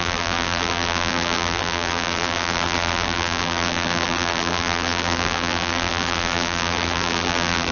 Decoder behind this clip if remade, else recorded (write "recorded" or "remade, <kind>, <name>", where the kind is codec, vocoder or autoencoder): remade, vocoder, BigVGAN v2